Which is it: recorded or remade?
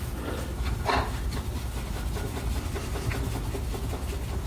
recorded